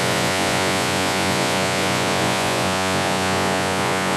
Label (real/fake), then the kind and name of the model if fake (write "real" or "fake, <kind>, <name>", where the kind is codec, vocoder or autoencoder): fake, vocoder, Vocos